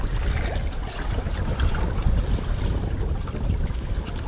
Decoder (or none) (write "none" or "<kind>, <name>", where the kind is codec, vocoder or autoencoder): none